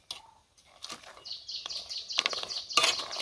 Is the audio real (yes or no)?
yes